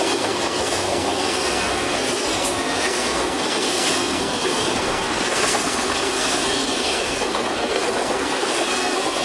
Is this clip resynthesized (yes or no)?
yes